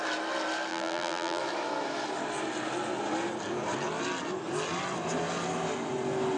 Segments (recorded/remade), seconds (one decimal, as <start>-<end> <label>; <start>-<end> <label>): 0.0-0.7 recorded; 0.7-1.4 remade; 1.4-6.4 recorded